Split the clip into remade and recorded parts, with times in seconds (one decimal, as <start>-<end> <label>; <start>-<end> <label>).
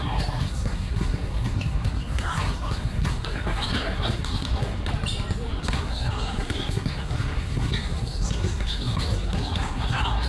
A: 0.0-4.9 remade; 4.9-5.5 recorded; 5.5-10.3 remade